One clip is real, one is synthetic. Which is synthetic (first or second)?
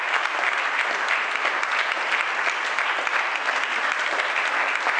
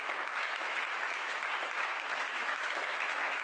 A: second